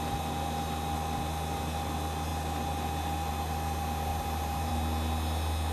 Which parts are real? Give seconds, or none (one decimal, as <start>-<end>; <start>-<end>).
0.0-4.1; 4.7-5.7